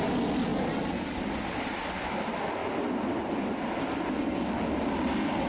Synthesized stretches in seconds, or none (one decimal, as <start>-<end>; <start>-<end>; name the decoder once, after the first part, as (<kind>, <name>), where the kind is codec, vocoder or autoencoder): none